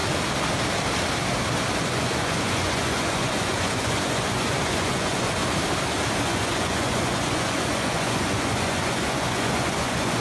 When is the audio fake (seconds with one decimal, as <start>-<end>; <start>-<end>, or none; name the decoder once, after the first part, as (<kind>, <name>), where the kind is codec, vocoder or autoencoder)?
1.8-5.4 (vocoder, Vocos); 6.2-10.2